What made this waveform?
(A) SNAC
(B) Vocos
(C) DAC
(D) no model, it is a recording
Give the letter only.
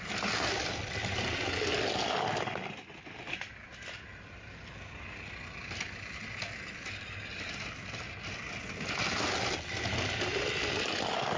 D